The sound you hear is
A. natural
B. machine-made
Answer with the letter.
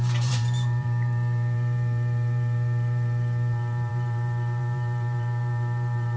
B